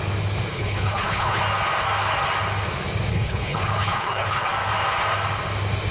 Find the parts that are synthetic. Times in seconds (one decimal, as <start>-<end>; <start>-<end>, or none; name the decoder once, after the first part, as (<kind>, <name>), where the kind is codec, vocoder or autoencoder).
0.5-1.4 (codec, HILCodec); 3.1-4.5